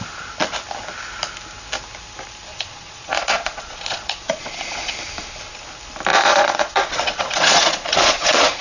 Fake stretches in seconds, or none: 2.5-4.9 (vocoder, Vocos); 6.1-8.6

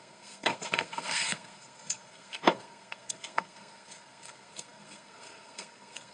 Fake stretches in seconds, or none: 0.0-6.1 (codec, SNAC)

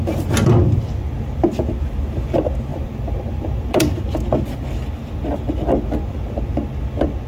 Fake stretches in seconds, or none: 2.7-4.0 (vocoder, BigVGAN v2)

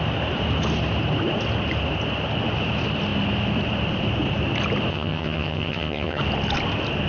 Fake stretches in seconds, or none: 4.9-6.2 (vocoder, HiFi-GAN)

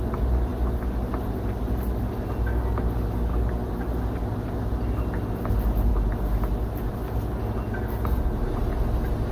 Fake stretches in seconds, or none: none

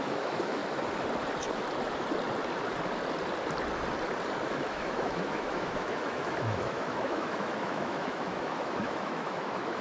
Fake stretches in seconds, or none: 0.0-0.6 (autoencoder, DAC-VAE); 4.5-9.8